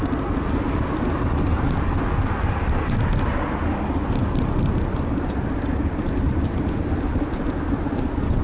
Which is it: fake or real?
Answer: real